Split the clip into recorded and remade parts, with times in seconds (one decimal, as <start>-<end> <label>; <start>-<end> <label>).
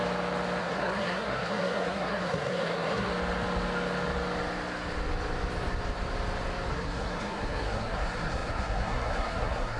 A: 0.0-0.6 recorded; 0.6-3.1 remade; 3.1-6.7 recorded; 6.7-9.8 remade